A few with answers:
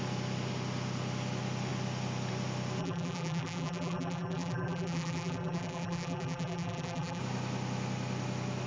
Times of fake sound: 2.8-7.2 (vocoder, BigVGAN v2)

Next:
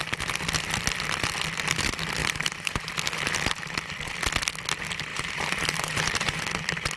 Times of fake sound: 2.2-2.9 (vocoder, BigVGAN v2); 5.1-6.4

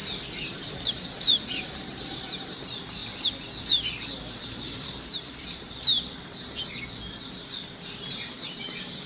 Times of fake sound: 0.7-3.0 (vocoder, BigVGAN v2); 3.6-5.9; 7.9-9.1

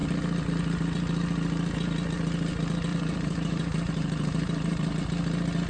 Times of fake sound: 2.9-4.9 (vocoder, BigVGAN v2)

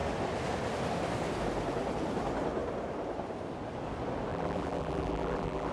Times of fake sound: 4.3-5.7 (vocoder, BigVGAN v2)

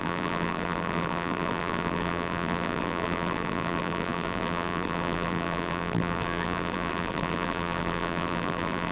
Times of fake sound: 0.0-8.9 (vocoder, BigVGAN v2)

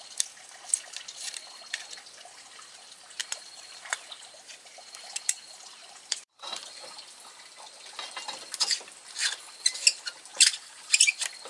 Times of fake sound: 3.2-7.0 (vocoder, BigVGAN v2); 10.3-10.9

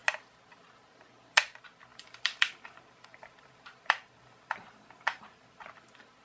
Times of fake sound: 1.9-5.6 (vocoder, BigVGAN v2)